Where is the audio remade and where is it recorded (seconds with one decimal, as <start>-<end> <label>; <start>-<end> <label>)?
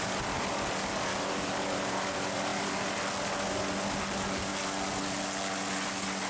0.0-6.3 recorded